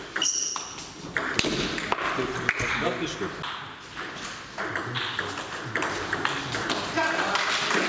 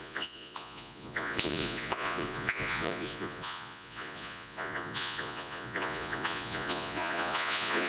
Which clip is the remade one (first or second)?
second